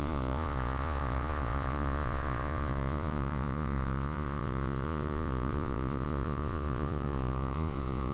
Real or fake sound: fake